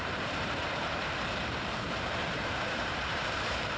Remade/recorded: remade